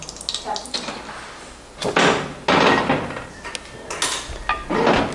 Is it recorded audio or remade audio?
recorded